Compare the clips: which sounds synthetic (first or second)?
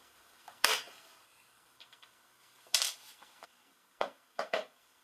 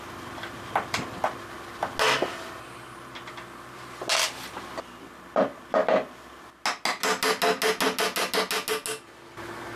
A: first